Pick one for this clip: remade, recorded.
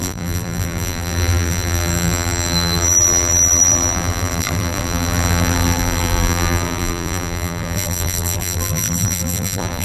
remade